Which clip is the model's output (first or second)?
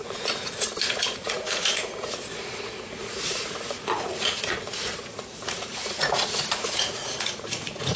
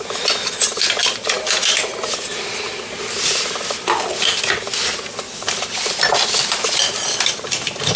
first